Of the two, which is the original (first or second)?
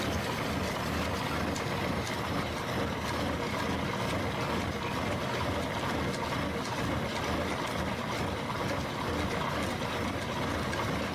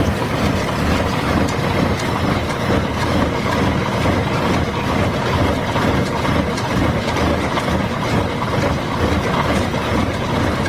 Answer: first